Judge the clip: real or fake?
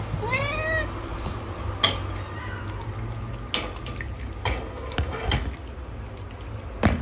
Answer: real